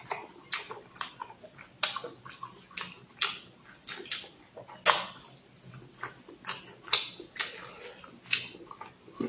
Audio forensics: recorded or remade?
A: recorded